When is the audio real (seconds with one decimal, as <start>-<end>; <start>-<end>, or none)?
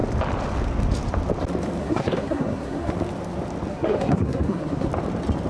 0.0-1.8; 2.9-3.7; 4.9-5.5